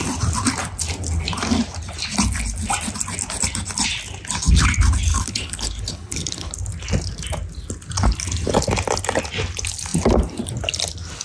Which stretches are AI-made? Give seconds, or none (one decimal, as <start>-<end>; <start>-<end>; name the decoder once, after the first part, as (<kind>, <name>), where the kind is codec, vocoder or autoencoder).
5.1-6.5 (codec, HILCodec)